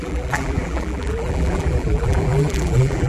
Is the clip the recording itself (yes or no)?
no